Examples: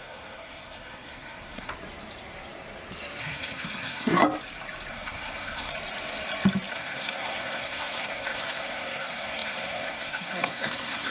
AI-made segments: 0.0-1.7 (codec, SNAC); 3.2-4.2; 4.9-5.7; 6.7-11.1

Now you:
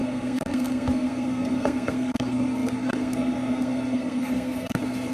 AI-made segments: 0.0-5.1 (codec, SNAC)

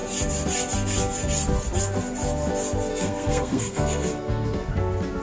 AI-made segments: 2.9-4.7 (codec, SNAC)

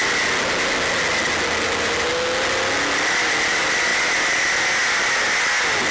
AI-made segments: none

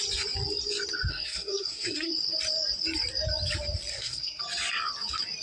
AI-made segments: 1.1-2.1 (codec, SNAC); 3.9-4.4